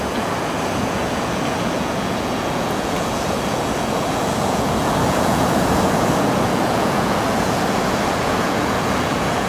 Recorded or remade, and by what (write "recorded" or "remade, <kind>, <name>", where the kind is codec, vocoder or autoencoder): remade, vocoder, Vocos